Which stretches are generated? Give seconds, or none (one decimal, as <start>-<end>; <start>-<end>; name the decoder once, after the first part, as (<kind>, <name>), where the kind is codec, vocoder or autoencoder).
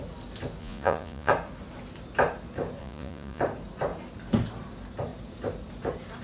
0.6-1.3 (vocoder, Vocos); 2.8-3.4